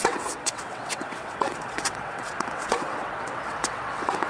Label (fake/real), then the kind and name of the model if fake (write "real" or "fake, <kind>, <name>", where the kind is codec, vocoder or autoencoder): fake, vocoder, WaveNeXt